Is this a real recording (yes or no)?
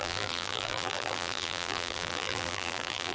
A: no